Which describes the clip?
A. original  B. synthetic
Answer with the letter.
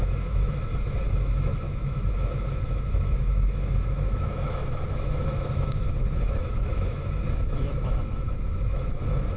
B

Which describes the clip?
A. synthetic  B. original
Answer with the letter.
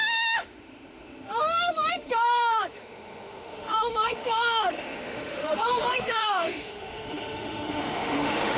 A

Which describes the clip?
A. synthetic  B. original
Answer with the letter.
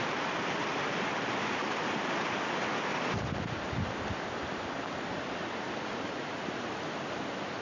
B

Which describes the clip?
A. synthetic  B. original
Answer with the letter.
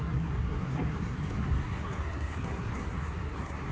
A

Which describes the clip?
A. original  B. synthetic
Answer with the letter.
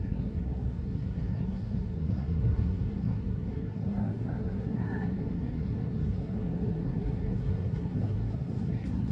B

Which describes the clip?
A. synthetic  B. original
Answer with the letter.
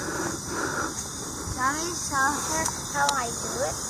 B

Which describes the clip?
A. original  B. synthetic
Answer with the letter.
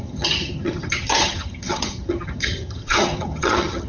B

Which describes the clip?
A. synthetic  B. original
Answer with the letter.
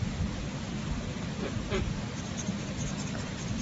B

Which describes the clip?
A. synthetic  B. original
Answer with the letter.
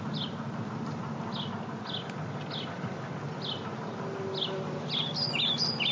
B